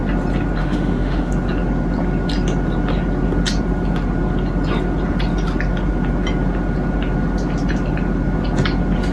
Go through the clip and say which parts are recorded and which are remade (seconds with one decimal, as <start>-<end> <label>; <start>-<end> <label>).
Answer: 0.0-0.6 recorded; 0.6-1.3 remade; 1.3-9.1 recorded